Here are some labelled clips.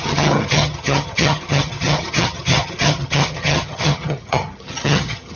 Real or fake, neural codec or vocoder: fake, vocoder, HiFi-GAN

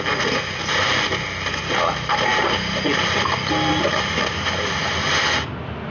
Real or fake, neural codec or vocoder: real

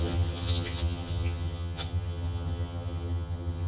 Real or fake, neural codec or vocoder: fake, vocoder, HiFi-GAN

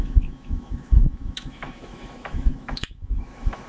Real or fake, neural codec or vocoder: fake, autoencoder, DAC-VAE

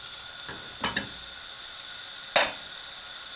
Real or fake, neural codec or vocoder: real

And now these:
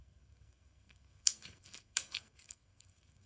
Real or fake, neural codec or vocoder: fake, codec, SNAC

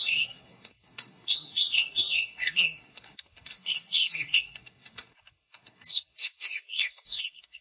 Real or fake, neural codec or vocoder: fake, codec, SNAC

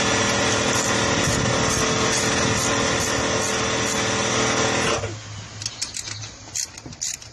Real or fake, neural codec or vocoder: real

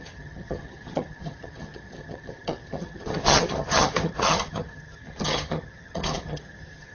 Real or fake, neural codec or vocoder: fake, vocoder, HiFi-GAN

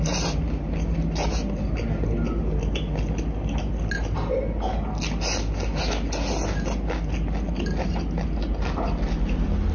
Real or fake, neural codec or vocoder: real